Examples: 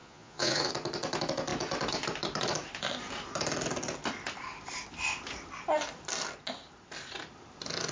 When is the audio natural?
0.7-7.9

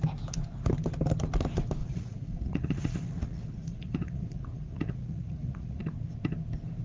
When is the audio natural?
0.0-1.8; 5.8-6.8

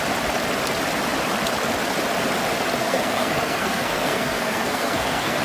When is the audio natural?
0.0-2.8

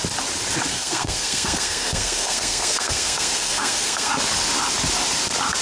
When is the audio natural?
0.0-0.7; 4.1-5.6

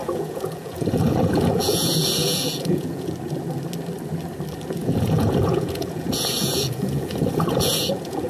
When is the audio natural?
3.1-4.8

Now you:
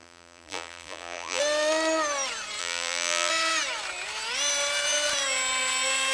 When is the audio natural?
1.4-2.6; 3.3-6.1

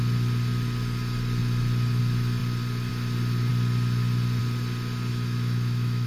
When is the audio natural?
0.0-5.1